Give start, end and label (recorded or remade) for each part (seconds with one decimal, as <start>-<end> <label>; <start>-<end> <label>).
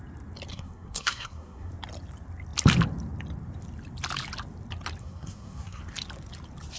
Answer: 0.0-0.5 recorded; 0.5-1.7 remade; 1.7-5.0 recorded; 5.0-5.8 remade; 5.8-6.8 recorded